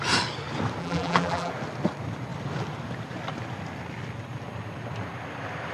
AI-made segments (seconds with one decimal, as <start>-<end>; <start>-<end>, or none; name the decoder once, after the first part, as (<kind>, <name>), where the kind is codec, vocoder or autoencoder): 0.8-1.5 (vocoder, BigVGAN v2)